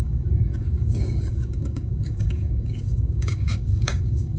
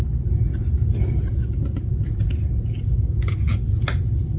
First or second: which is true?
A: second